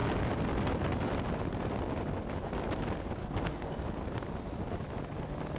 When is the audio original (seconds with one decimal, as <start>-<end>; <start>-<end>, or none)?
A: 0.0-3.2; 3.8-5.6